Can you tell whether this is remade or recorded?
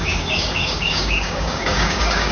remade